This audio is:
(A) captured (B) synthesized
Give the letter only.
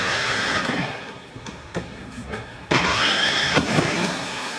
B